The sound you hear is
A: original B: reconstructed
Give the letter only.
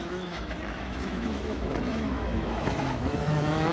B